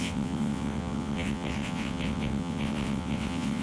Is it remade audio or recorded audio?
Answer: remade